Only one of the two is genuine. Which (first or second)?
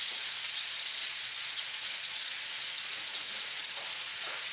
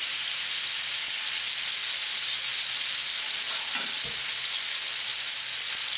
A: second